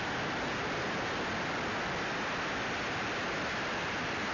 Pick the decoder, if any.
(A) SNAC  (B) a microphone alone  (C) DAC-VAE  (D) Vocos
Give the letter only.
B